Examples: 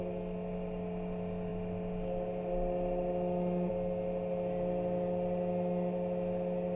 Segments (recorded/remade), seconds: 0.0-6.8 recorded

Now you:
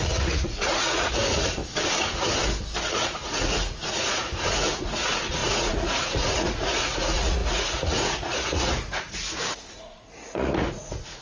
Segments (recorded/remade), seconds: 0.0-1.6 remade; 1.6-2.9 recorded; 2.9-11.2 remade